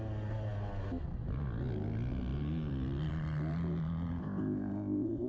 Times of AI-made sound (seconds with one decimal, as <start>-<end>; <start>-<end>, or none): 4.2-5.3